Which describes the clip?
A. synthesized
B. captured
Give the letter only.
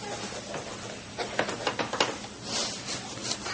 B